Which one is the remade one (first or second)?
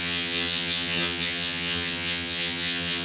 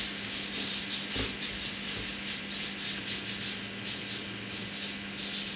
first